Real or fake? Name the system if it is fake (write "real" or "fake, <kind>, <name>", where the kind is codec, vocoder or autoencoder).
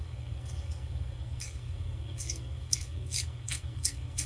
fake, codec, SNAC